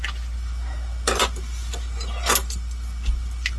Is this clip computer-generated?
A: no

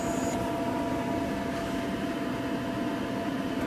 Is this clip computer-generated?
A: no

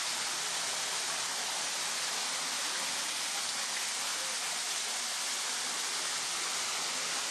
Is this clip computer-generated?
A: no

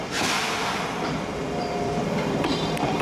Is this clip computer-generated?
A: yes